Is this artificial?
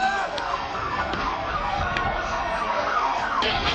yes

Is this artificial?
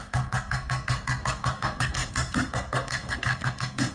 yes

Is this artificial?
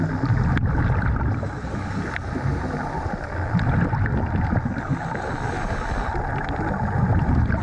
no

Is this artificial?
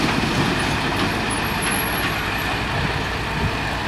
no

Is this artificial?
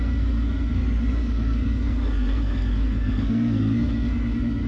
yes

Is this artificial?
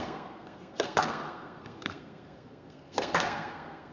yes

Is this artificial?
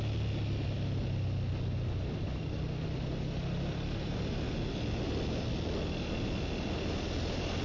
no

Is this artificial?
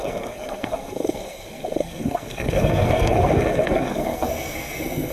yes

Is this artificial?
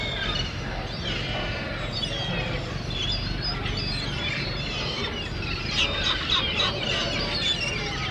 no